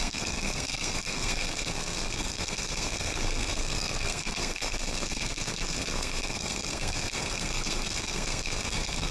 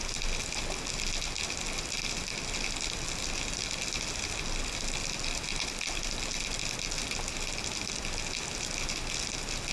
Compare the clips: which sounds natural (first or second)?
second